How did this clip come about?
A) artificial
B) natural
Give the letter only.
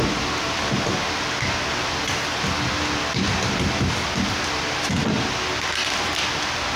B